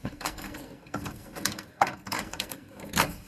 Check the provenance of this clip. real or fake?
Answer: fake